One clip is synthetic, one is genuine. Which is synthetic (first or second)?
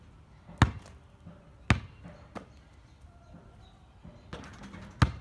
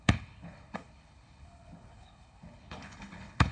second